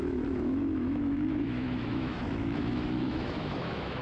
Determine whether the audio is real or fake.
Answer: fake